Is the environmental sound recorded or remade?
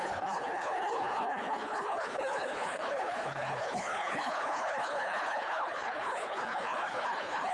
remade